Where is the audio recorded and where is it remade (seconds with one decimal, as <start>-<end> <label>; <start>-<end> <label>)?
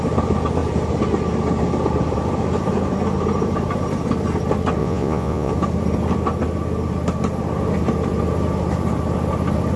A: 0.0-4.8 recorded; 4.8-5.5 remade; 5.5-9.8 recorded